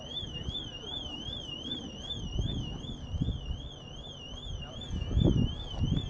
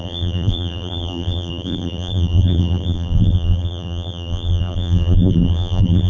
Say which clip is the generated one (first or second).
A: second